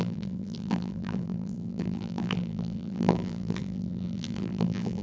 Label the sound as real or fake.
fake